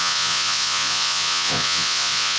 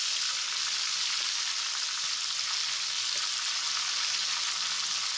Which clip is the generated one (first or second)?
first